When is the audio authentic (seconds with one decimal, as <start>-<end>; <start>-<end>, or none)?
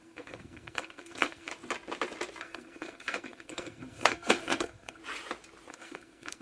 1.5-2.4; 5.0-5.7